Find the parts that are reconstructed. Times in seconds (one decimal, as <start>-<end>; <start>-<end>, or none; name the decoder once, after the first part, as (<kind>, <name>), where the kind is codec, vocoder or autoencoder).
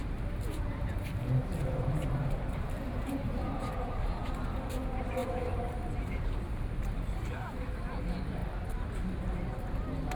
0.0-8.4 (vocoder, BigVGAN v2)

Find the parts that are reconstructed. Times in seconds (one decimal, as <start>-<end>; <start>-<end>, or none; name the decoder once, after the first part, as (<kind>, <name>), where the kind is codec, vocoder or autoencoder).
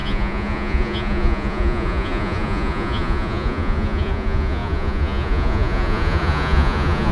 0.0-7.1 (vocoder, Vocos)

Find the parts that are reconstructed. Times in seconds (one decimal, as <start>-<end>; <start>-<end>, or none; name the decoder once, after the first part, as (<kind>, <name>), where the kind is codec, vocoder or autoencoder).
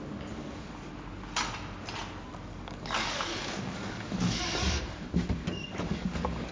0.4-0.9 (codec, DAC); 2.5-6.5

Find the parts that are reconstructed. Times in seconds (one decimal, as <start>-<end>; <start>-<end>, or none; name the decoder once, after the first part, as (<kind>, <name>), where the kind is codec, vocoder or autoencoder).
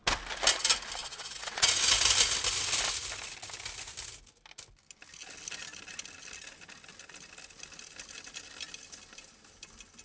1.0-1.7 (vocoder, WaveNeXt)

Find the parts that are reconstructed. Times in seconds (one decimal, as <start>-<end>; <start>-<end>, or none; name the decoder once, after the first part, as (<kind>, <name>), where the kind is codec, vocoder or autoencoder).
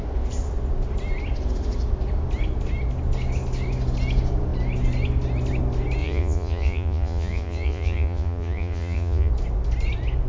6.0-9.3 (vocoder, Vocos)